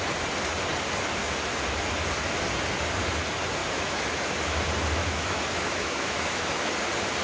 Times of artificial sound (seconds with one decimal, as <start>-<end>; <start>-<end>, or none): 3.6-4.2; 5.0-6.7